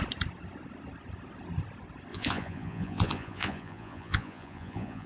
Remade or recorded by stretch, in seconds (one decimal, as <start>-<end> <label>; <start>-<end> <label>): 0.0-2.1 recorded; 2.1-5.1 remade